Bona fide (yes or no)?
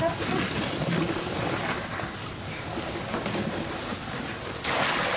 yes